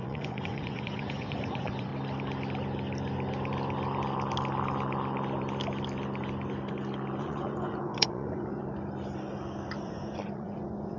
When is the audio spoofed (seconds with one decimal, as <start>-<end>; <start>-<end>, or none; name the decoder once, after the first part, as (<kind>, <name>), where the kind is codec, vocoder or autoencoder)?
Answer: 0.0-1.9 (vocoder, Vocos); 7.2-8.6; 9.8-11.0